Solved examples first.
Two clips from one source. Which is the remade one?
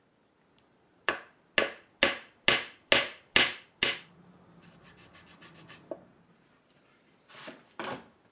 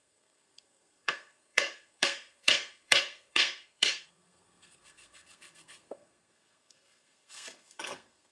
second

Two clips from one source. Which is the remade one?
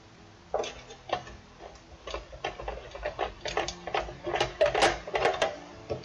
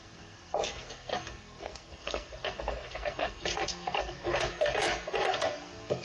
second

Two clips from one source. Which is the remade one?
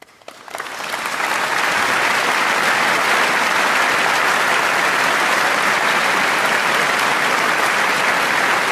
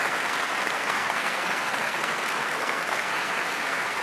second